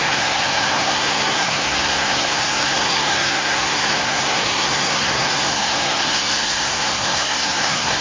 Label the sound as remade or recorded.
remade